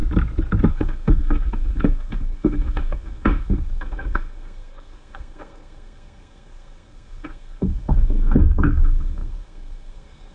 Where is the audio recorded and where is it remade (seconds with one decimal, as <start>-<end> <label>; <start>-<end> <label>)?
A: 0.0-0.7 recorded; 0.7-10.3 remade